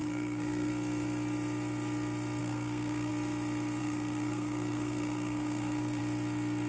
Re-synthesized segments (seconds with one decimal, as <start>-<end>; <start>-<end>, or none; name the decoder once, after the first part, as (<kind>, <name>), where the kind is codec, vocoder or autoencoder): 0.0-0.7 (codec, SNAC); 2.4-3.1; 3.8-6.0